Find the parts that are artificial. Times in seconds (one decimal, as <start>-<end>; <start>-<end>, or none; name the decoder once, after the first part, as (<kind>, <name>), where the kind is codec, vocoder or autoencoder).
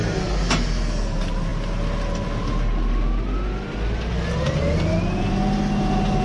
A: none